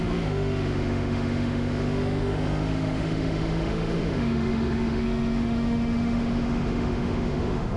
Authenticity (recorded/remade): remade